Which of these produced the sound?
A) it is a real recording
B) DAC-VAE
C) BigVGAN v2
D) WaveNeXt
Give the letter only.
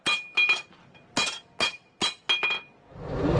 A